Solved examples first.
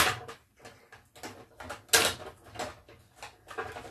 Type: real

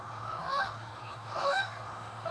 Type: fake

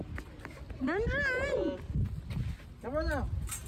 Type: real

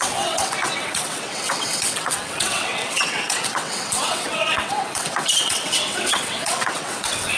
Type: fake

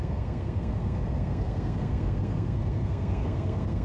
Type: fake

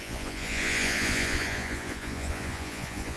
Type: fake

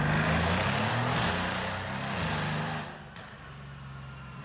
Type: real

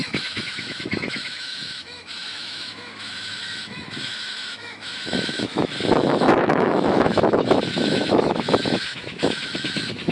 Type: fake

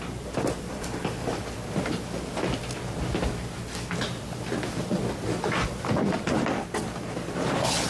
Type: real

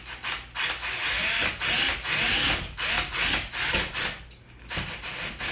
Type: real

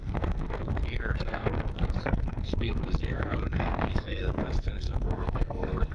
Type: fake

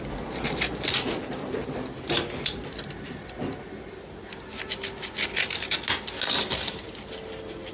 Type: real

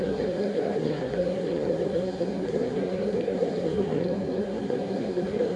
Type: fake